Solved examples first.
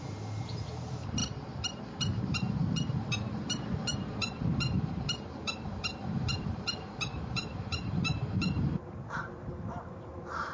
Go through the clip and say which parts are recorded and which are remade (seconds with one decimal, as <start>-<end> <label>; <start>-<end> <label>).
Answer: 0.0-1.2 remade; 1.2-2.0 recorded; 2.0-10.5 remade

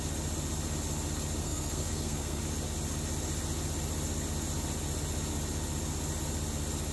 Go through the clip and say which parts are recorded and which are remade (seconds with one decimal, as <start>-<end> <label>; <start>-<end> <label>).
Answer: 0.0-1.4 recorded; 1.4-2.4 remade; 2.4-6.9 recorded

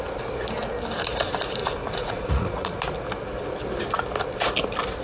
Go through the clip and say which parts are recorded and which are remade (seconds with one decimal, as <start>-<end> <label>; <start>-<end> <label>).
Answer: 0.0-1.6 recorded; 1.6-2.8 remade; 2.8-5.0 recorded

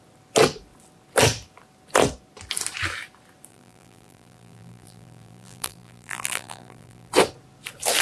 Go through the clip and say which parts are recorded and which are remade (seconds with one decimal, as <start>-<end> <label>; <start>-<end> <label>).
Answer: 0.0-3.5 recorded; 3.5-7.1 remade; 7.1-8.0 recorded

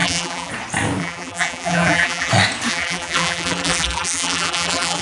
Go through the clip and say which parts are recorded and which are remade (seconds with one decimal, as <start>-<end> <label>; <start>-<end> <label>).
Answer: 0.0-0.5 remade; 0.5-1.0 recorded; 1.0-2.3 remade; 2.3-2.7 recorded; 2.7-5.0 remade

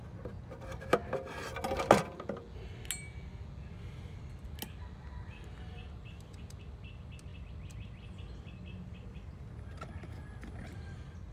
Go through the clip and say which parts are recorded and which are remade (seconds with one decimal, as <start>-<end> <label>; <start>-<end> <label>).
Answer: 0.0-11.3 recorded

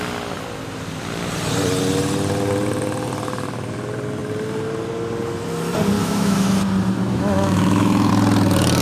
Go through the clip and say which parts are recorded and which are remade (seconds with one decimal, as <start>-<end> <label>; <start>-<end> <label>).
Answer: 0.0-6.0 recorded; 6.0-6.5 remade; 6.5-7.1 recorded; 7.1-8.1 remade; 8.1-8.8 recorded